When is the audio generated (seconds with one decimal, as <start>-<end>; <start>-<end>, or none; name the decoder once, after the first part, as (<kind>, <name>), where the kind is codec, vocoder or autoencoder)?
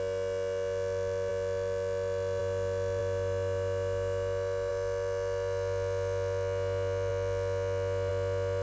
none